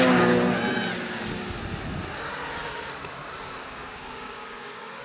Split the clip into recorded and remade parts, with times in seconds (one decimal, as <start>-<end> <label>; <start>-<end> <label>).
0.0-3.6 recorded; 3.6-5.0 remade